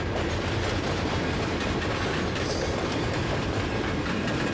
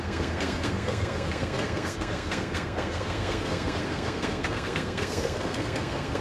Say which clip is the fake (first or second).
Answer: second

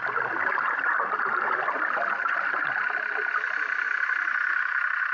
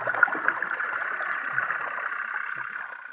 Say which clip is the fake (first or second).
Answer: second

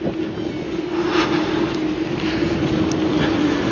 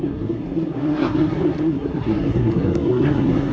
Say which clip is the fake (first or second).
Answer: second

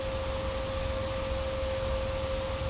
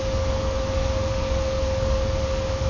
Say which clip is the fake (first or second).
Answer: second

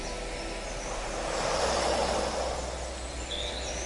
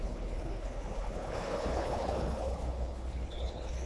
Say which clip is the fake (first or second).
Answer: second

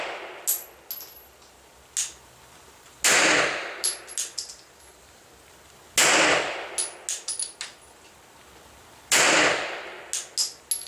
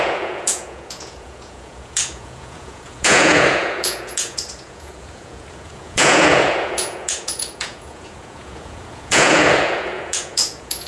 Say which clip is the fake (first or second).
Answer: second